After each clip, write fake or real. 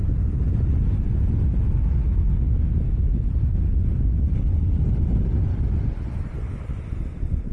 real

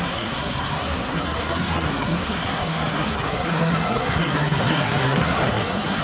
fake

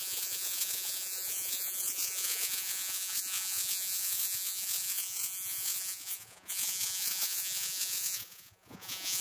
fake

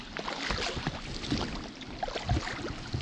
real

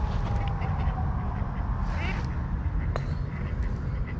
real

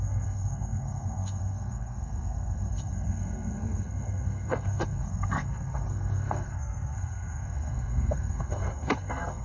fake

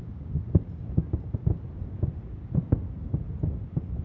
real